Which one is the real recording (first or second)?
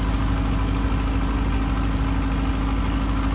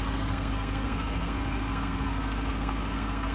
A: first